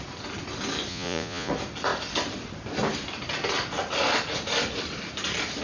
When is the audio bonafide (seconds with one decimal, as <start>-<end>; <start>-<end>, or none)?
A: 0.0-0.9; 1.5-5.6